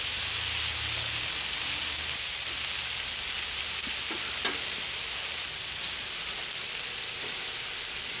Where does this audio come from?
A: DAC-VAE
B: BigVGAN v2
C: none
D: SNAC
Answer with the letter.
C